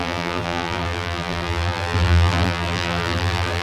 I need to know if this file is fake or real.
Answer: fake